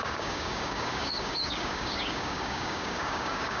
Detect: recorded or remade remade